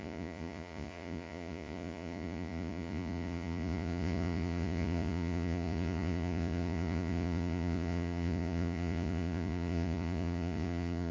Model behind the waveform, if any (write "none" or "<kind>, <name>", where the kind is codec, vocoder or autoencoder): vocoder, Vocos